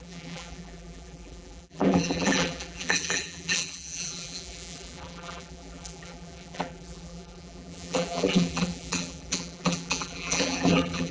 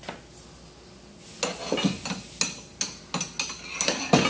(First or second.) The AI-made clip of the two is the first